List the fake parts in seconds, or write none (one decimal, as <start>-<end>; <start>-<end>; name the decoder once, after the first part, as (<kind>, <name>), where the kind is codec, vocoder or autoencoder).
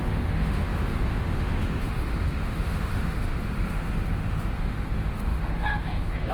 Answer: 0.0-6.3 (autoencoder, DAC-VAE)